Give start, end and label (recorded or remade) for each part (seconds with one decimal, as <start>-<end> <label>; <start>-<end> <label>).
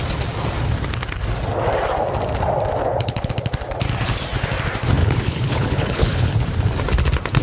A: 0.0-2.8 recorded; 2.8-3.3 remade; 3.3-5.0 recorded; 5.0-6.3 remade; 6.3-7.4 recorded